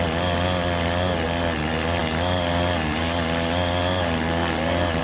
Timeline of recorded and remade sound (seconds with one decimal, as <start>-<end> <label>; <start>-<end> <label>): 0.0-5.0 recorded